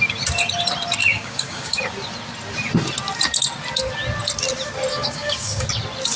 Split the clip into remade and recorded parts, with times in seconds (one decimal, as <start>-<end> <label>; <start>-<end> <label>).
0.0-1.0 recorded; 1.0-1.8 remade; 1.8-4.9 recorded; 4.9-5.7 remade; 5.7-6.2 recorded